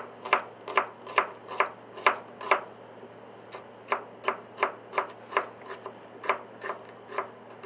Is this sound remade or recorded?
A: recorded